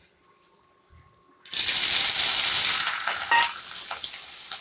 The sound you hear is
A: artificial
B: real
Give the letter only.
B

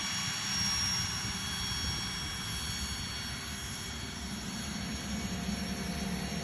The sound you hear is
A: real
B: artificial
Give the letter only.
A